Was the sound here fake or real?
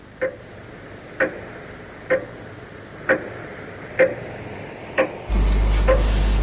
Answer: real